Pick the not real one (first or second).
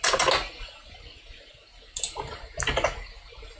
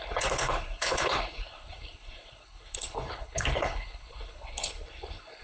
second